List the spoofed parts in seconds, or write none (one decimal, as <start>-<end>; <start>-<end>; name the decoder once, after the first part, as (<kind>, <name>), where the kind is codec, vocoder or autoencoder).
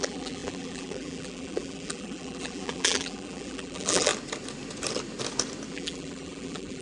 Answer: 0.0-4.1 (vocoder, BigVGAN v2); 5.7-6.8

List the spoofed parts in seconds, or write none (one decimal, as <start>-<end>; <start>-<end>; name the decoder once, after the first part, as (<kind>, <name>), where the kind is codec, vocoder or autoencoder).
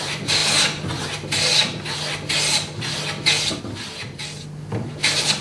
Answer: 0.0-0.4 (vocoder, BigVGAN v2); 3.6-4.2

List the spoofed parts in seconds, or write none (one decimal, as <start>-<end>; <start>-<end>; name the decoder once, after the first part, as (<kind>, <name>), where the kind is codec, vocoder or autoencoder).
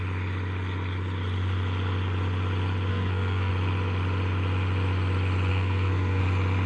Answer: 2.9-3.5 (codec, SNAC); 5.5-6.2